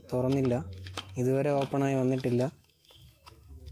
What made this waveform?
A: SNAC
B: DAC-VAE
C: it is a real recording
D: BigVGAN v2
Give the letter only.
B